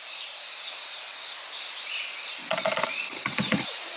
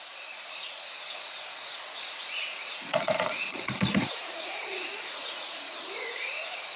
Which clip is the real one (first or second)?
first